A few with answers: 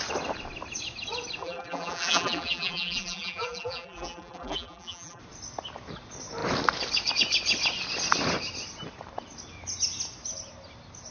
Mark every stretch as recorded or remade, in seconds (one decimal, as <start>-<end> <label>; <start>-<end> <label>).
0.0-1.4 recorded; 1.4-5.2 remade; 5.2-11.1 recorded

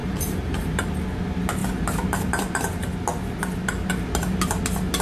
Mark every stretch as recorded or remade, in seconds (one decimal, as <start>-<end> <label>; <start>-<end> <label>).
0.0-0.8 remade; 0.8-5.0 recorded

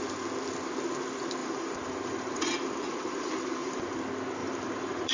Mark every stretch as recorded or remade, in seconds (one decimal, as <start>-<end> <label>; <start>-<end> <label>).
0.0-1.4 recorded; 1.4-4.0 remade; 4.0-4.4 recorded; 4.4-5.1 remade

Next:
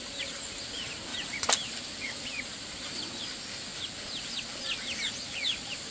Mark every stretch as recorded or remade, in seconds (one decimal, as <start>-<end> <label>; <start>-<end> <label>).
0.0-1.1 recorded; 1.1-2.8 remade; 2.8-5.9 recorded